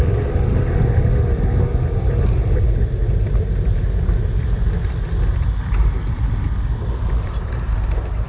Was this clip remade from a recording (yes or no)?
no